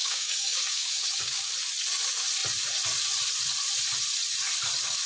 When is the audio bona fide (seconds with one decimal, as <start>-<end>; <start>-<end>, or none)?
1.5-5.1